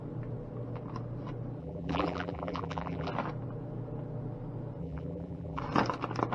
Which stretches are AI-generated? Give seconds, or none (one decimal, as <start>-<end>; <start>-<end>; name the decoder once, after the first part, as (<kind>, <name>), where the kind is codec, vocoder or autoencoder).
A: 1.6-3.1 (vocoder, BigVGAN v2); 4.8-5.6

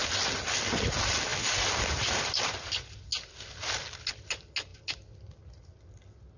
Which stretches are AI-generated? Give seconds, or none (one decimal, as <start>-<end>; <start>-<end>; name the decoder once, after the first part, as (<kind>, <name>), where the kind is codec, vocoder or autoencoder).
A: none

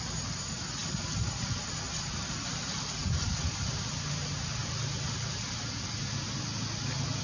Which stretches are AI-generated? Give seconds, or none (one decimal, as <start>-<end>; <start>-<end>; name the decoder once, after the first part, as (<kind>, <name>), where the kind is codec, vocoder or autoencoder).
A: none

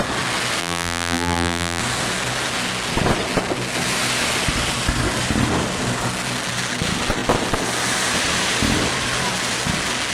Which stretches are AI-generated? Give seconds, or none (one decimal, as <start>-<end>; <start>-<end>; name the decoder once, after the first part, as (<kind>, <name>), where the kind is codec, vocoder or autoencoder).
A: 0.6-1.8 (vocoder, BigVGAN v2)

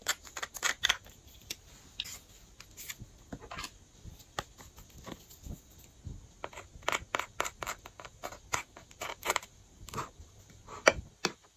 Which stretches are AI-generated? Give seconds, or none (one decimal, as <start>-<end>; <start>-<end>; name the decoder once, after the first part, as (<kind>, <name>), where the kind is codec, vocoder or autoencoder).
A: 0.0-1.5 (vocoder, BigVGAN v2); 6.7-10.9

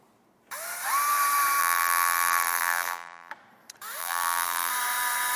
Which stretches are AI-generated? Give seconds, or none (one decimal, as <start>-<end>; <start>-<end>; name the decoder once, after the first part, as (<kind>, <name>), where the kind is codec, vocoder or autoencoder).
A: 1.6-3.3 (vocoder, BigVGAN v2); 4.0-4.7

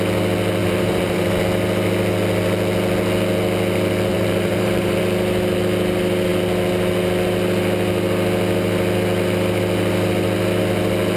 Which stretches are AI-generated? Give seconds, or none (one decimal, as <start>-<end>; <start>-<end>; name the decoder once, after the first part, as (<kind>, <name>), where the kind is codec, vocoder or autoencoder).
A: 0.6-1.4 (vocoder, BigVGAN v2); 4.1-5.0

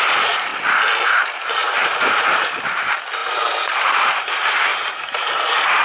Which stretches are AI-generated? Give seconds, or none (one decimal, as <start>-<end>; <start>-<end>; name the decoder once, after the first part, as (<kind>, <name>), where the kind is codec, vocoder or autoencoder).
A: 0.0-0.5 (vocoder, BigVGAN v2); 1.1-5.8